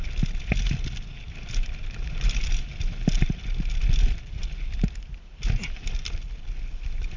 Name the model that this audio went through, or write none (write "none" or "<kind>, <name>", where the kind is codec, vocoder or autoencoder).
none